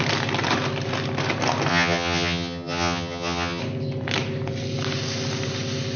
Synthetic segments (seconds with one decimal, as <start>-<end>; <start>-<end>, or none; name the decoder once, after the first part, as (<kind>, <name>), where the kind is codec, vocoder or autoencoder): 1.7-3.6 (vocoder, HiFi-GAN)